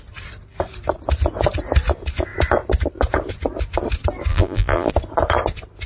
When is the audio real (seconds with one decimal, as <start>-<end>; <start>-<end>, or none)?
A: 0.0-4.3; 4.9-5.9